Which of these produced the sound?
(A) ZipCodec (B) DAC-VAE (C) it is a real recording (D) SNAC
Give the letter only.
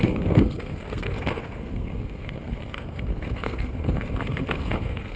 D